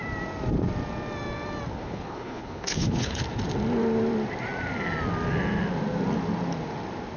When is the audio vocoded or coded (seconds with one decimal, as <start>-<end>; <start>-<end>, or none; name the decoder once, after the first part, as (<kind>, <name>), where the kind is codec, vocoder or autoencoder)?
1.7-3.2 (codec, HILCodec)